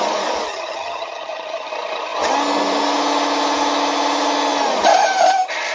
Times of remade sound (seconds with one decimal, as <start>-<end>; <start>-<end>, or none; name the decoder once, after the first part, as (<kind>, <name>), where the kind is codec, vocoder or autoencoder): 0.5-1.7 (vocoder, HiFi-GAN)